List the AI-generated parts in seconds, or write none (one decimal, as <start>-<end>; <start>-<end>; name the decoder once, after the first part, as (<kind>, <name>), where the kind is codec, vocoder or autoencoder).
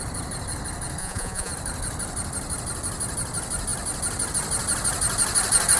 1.0-1.5 (vocoder, Vocos)